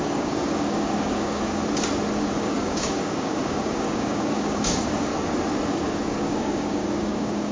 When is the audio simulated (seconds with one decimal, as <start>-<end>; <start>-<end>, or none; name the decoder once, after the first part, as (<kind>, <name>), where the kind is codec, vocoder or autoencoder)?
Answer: 0.0-1.6 (codec, DAC); 2.3-5.1; 5.7-7.5